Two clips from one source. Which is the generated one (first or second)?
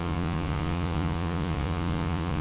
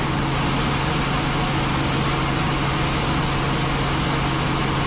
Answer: first